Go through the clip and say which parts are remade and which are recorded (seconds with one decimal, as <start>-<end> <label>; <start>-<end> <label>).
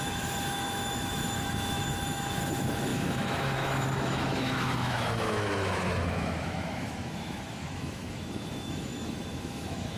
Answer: 0.0-10.0 remade